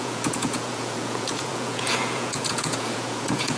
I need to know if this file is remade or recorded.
remade